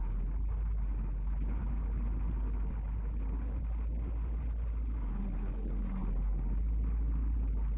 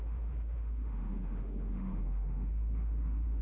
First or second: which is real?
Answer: first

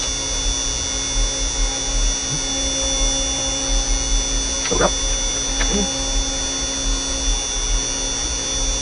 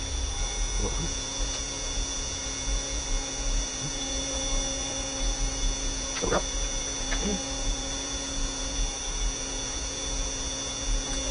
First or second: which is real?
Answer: first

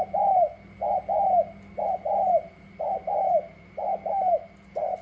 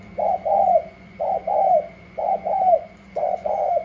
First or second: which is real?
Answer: first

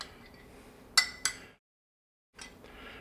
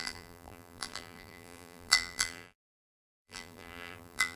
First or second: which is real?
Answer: first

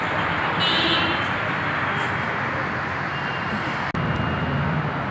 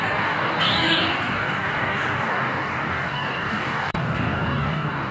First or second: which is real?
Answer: first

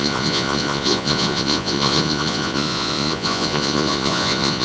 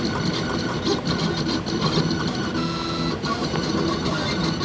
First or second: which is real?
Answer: second